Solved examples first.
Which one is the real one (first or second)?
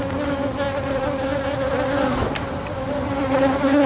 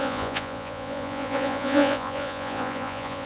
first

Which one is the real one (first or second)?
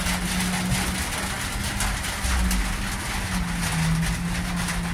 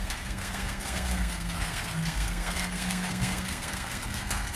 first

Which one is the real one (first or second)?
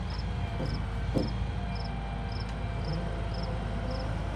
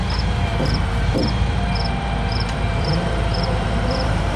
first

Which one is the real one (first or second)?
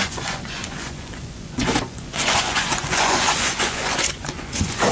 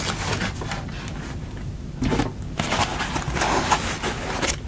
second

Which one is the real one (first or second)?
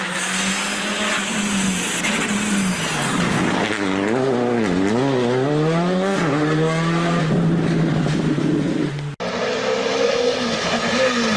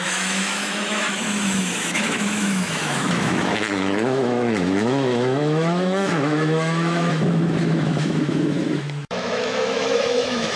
first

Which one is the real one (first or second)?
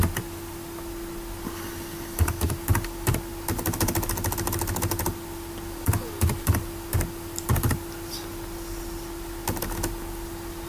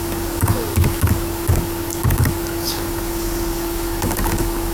first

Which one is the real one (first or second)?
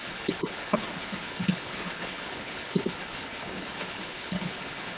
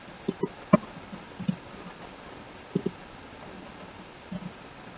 second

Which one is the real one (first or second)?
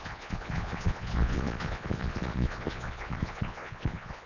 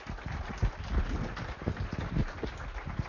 second